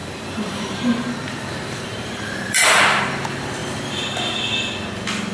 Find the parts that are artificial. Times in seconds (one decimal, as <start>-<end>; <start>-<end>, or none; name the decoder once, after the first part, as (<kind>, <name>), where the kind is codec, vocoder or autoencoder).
0.0-2.8 (vocoder, BigVGAN v2); 3.6-4.1